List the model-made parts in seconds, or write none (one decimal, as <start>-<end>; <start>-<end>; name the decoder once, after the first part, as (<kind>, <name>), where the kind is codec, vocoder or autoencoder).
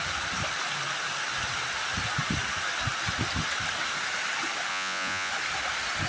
4.7-5.3 (vocoder, Vocos)